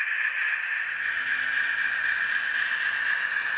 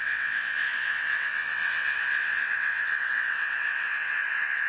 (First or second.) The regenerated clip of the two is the second